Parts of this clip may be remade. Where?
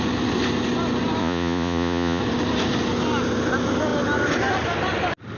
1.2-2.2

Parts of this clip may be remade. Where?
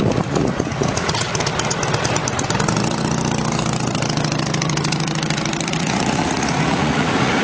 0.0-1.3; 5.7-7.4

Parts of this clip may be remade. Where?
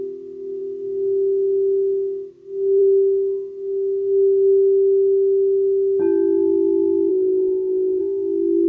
7.1-8.0